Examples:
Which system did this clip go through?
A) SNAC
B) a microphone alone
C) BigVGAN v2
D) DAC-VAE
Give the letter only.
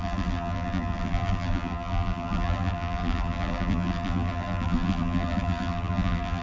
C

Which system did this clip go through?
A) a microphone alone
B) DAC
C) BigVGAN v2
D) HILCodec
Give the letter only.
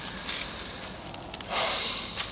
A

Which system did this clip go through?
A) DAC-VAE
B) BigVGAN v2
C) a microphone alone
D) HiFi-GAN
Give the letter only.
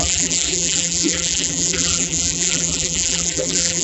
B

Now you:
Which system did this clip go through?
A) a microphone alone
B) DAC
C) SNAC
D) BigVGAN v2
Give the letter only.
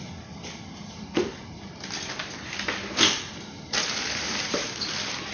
D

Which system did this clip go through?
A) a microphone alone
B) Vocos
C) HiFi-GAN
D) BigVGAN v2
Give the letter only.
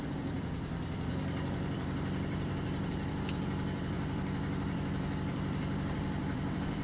D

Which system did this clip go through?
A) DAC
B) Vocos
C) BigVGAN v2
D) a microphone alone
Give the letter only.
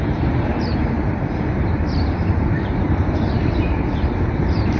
C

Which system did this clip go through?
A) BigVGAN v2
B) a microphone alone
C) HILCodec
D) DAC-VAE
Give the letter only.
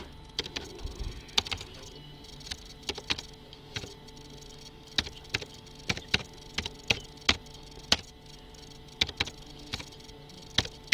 B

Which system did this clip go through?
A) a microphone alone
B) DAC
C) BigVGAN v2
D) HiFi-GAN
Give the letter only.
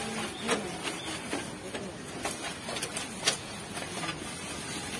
A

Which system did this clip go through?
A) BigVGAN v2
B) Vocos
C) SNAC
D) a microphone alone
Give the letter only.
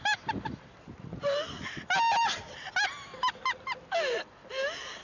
D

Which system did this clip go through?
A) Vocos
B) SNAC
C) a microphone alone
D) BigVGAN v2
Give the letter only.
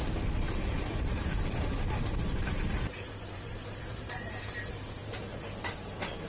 D